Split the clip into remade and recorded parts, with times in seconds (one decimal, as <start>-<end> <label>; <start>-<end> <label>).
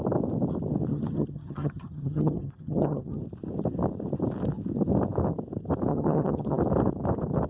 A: 0.0-0.9 recorded; 0.9-3.2 remade; 3.2-5.9 recorded; 5.9-6.6 remade; 6.6-7.5 recorded